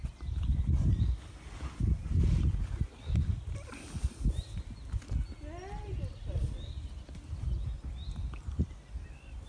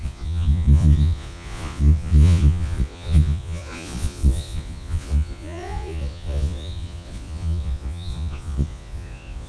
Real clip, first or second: first